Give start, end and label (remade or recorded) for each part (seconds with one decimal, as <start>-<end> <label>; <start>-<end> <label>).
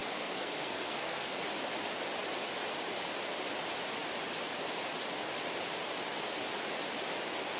0.0-1.3 remade; 1.3-7.6 recorded